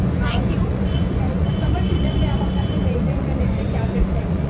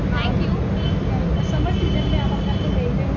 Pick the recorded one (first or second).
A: second